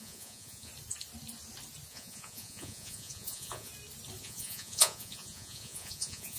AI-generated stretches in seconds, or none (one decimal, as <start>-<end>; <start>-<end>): 0.0-0.7; 1.9-3.7; 4.2-6.4